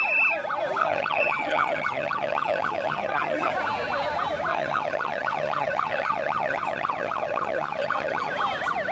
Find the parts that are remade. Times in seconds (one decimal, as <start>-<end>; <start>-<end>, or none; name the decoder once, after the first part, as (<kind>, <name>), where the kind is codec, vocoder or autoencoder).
0.8-3.5 (vocoder, HiFi-GAN); 4.5-8.3